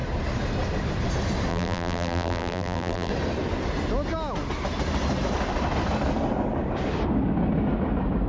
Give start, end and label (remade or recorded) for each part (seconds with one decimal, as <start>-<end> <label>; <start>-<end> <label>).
0.0-1.5 recorded; 1.5-3.1 remade; 3.1-8.3 recorded